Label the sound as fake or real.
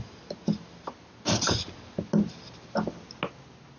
real